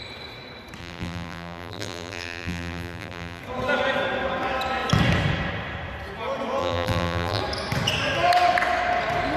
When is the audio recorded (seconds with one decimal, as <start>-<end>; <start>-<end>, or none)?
0.0-0.8; 3.4-6.6; 7.4-9.4